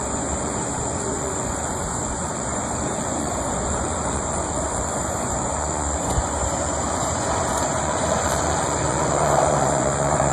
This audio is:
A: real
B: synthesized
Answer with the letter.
B